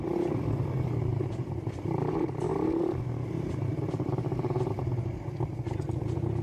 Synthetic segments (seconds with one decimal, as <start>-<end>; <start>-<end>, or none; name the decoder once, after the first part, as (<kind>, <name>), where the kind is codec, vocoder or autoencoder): 1.1-4.8 (vocoder, BigVGAN v2)